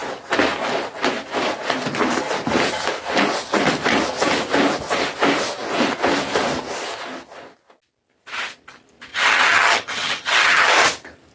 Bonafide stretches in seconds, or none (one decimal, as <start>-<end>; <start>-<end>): 0.0-9.1; 10.7-11.3